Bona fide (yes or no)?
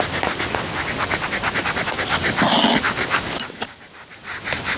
yes